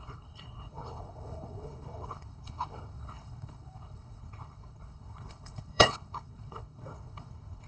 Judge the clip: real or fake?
fake